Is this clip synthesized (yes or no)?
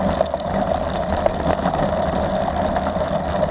no